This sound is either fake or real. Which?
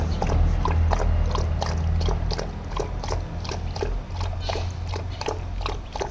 real